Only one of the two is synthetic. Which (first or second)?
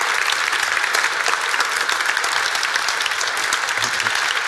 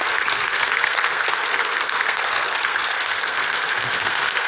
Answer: second